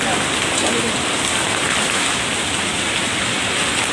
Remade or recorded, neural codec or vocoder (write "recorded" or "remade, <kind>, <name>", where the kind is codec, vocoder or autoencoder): recorded